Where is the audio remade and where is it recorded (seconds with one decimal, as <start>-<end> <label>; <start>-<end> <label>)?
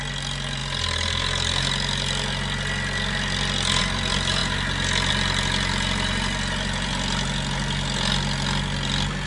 0.0-9.3 recorded